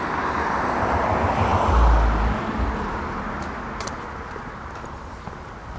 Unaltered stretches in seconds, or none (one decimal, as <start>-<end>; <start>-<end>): 0.0-5.8